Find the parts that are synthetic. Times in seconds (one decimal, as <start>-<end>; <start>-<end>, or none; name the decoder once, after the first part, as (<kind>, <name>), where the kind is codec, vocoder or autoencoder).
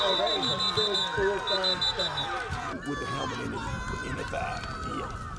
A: none